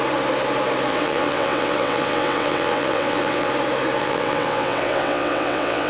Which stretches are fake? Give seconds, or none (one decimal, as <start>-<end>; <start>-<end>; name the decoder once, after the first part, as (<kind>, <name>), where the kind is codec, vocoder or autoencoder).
0.9-3.5 (vocoder, WaveNeXt); 4.0-5.9